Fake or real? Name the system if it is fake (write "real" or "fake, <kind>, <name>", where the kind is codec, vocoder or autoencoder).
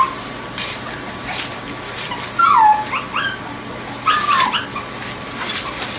real